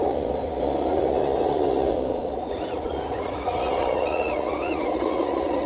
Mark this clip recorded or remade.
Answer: remade